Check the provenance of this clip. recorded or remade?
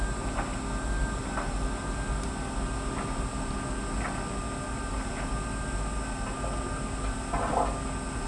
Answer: recorded